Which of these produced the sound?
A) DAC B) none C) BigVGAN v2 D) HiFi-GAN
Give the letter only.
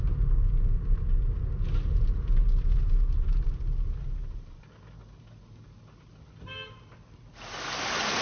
B